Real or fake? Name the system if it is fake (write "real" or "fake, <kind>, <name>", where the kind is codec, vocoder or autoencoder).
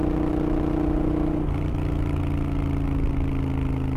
real